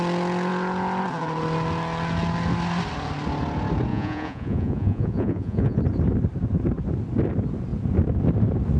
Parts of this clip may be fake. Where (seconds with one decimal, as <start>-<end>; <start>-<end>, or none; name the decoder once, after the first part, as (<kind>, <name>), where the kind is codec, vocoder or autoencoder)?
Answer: 3.9-5.8 (vocoder, Vocos)